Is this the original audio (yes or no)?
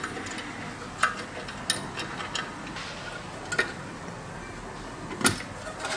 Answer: yes